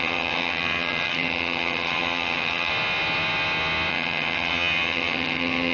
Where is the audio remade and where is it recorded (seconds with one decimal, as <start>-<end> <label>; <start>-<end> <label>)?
0.0-2.7 remade; 2.7-3.9 recorded; 3.9-5.7 remade